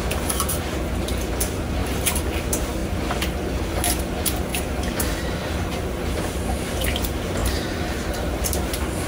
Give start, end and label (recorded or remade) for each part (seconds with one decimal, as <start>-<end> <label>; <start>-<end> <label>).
0.0-1.8 recorded; 1.8-2.3 remade; 2.3-4.5 recorded; 4.5-6.2 remade; 6.2-7.4 recorded; 7.4-8.4 remade; 8.4-9.1 recorded